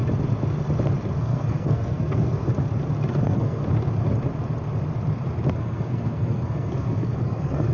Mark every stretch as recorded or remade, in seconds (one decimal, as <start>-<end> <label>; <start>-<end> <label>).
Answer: 0.0-1.2 recorded; 1.2-2.5 remade; 2.5-3.1 recorded; 3.1-3.6 remade; 3.6-5.5 recorded; 5.5-7.7 remade